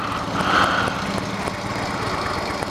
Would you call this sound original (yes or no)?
yes